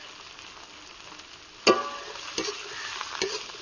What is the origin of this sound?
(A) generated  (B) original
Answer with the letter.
B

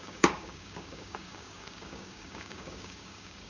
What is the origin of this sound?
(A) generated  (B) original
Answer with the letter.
A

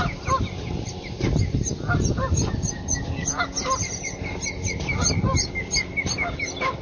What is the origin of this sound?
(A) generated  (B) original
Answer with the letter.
B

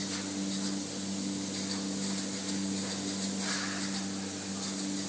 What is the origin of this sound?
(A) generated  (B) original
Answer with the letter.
B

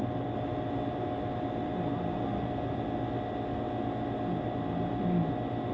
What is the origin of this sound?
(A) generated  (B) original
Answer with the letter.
B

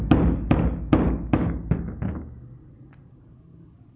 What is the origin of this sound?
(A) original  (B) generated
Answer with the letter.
A